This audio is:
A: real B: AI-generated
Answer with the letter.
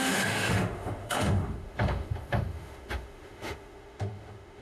B